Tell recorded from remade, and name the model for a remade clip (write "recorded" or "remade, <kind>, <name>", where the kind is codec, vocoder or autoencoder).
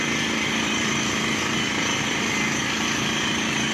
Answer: remade, vocoder, BigVGAN v2